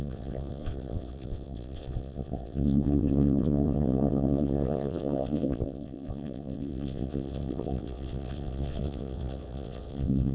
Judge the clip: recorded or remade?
remade